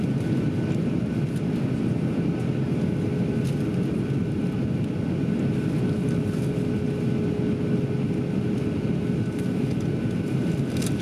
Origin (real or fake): real